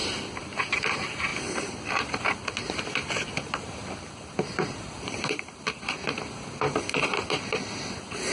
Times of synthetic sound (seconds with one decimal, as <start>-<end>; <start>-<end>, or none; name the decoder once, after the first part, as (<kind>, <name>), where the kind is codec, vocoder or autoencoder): 0.0-8.3 (vocoder, BigVGAN v2)